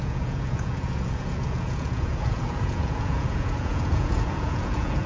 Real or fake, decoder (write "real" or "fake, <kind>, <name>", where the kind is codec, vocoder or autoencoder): fake, vocoder, Vocos